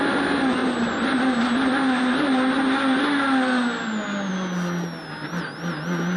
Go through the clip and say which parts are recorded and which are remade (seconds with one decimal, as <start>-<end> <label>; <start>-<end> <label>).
0.0-6.2 recorded

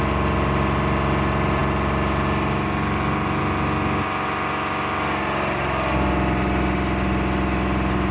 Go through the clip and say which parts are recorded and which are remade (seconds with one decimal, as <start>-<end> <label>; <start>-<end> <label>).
0.0-8.1 recorded

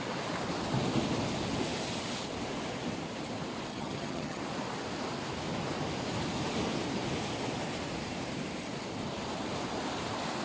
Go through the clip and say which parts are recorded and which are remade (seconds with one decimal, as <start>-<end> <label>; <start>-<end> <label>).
0.0-3.7 recorded; 3.7-4.4 remade; 4.4-10.4 recorded

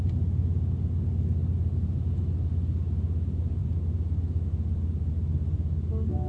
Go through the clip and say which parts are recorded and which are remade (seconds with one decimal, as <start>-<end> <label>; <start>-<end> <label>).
0.0-6.3 recorded

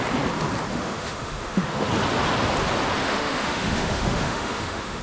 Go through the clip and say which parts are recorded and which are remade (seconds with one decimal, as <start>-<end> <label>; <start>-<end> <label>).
0.0-0.7 recorded; 0.7-1.9 remade; 1.9-3.0 recorded; 3.0-5.0 remade

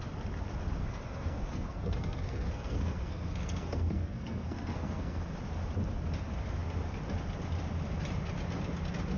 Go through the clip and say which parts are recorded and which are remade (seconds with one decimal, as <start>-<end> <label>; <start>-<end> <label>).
0.0-0.8 recorded; 0.8-5.2 remade; 5.2-9.2 recorded

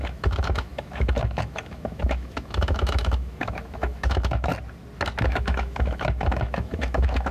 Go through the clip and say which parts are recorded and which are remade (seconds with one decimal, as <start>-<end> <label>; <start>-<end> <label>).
0.0-4.5 remade; 4.5-5.2 recorded; 5.2-7.3 remade

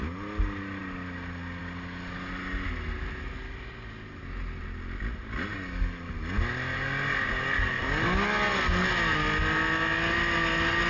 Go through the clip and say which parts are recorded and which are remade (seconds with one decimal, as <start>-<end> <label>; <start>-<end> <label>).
0.0-10.9 recorded